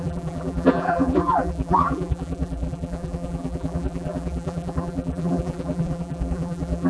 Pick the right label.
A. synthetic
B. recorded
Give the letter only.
A